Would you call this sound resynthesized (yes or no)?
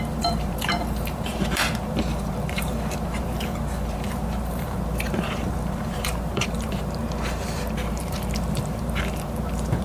yes